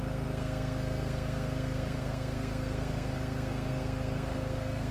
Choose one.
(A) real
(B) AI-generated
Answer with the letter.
B